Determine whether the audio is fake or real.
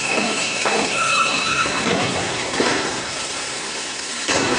fake